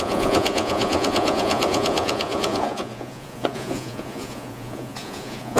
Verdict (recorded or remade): remade